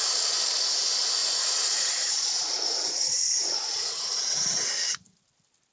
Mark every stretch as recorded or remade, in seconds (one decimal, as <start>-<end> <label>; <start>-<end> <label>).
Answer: 0.0-1.2 recorded; 1.2-4.6 remade; 4.6-5.7 recorded